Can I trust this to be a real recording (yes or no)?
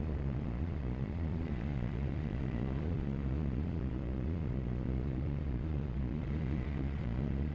no